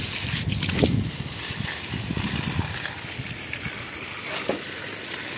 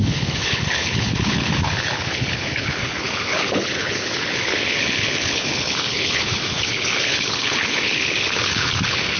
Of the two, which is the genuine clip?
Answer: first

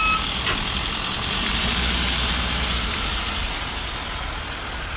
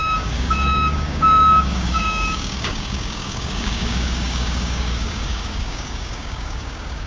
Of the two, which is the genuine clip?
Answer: first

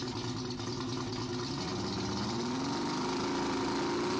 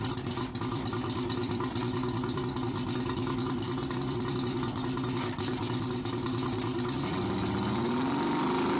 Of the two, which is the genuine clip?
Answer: first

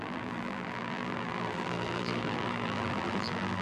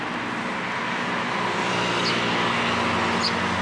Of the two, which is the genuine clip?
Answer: second